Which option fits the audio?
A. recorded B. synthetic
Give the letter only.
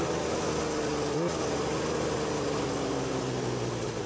A